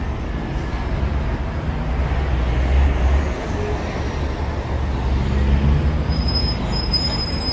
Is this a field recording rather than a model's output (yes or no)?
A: yes